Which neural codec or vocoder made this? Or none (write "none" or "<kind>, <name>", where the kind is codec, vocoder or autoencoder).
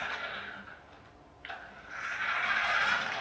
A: none